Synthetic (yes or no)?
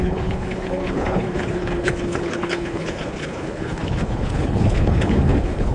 yes